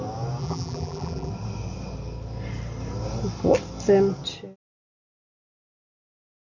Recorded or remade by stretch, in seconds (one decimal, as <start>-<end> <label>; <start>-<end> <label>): 0.0-0.4 recorded; 0.4-1.3 remade; 1.3-6.5 recorded